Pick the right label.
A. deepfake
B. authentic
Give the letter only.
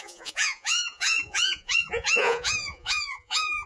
A